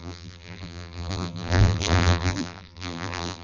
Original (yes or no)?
no